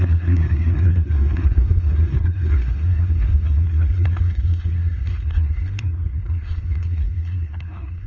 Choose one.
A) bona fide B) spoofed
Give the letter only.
B